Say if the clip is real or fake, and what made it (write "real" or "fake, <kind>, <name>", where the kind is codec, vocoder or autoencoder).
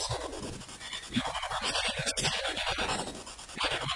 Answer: fake, vocoder, Vocos